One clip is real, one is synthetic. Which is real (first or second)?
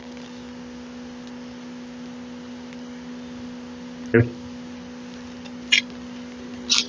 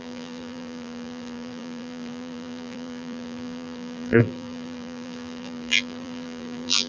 first